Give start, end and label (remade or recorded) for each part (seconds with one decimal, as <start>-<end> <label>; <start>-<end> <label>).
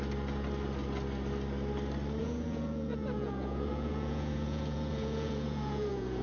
0.0-2.2 recorded; 2.2-6.2 remade